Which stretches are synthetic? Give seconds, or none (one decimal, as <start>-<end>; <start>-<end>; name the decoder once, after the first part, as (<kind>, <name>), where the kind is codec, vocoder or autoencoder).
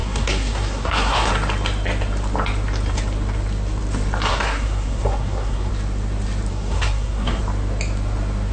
0.0-1.3 (codec, SNAC); 4.3-5.7; 6.5-7.4